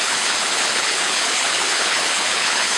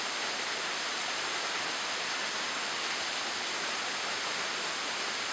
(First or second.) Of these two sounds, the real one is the second